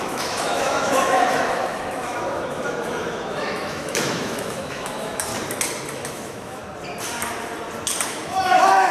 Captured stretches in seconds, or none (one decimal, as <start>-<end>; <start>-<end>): 5.3-5.9; 6.6-8.1